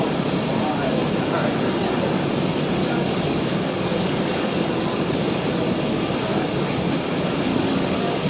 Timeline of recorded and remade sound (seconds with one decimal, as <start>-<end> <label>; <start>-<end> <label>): 0.0-2.8 recorded; 2.8-5.3 remade; 5.3-6.3 recorded; 6.3-6.9 remade; 6.9-7.5 recorded; 7.5-8.3 remade